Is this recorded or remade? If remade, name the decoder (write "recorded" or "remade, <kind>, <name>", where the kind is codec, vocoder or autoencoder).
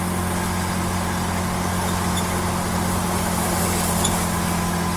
recorded